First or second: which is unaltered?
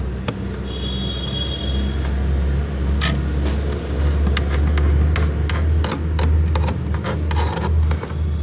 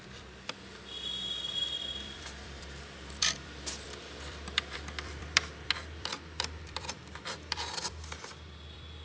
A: first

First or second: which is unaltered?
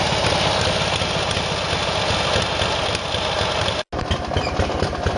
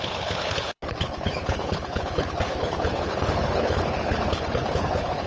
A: first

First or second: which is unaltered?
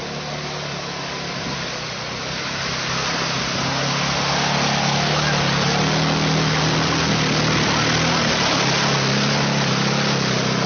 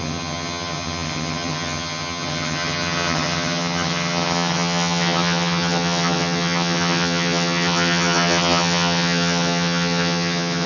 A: first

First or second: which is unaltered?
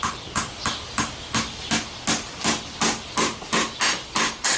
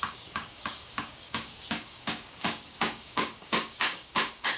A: first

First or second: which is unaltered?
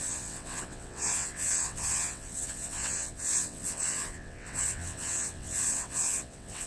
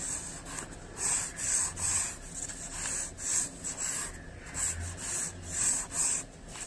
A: second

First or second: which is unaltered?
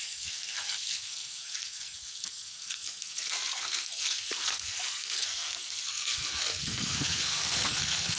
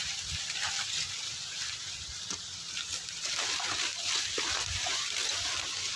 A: second